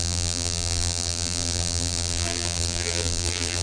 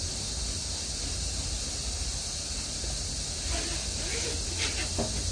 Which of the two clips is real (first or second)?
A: second